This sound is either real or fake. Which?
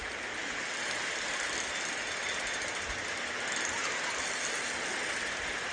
real